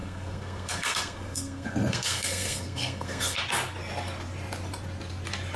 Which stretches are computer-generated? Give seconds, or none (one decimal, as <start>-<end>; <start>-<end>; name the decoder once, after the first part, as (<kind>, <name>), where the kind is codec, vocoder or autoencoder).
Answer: 0.0-3.4 (codec, SNAC)